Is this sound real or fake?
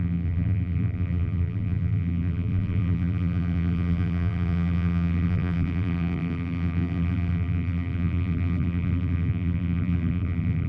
fake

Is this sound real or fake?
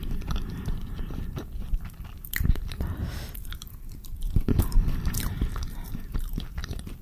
fake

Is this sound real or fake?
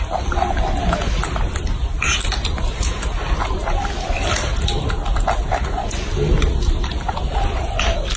real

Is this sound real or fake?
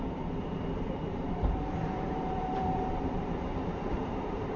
fake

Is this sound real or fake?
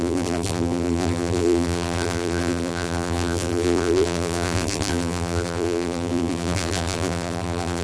fake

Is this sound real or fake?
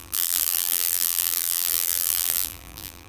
fake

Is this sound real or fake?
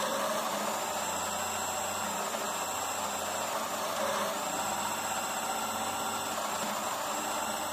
real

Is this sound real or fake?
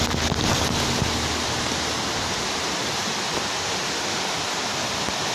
real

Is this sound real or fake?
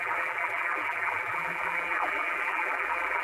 fake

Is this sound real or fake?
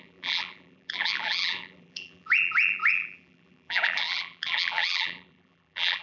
fake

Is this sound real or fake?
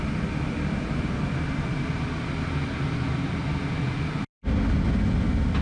real